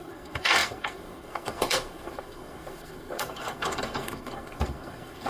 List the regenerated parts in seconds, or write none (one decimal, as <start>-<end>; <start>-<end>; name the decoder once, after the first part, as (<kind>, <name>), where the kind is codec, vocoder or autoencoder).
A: 0.0-5.3 (codec, SNAC)